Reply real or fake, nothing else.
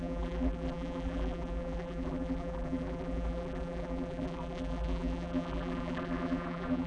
fake